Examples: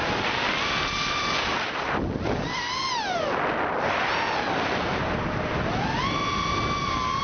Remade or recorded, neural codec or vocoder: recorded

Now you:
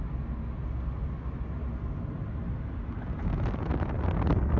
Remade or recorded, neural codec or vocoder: recorded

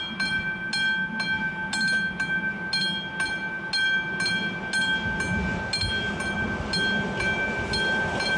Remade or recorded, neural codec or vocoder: recorded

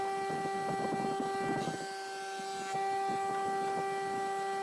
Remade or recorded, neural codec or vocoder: recorded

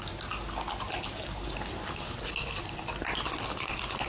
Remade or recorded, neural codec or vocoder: recorded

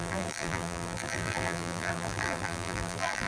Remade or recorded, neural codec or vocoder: remade, vocoder, BigVGAN v2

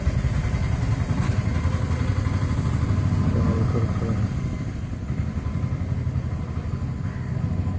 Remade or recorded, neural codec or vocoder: recorded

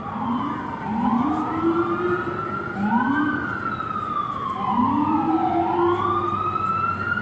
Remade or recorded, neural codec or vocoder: recorded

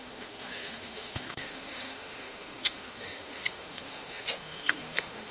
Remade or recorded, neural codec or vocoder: remade, autoencoder, DAC-VAE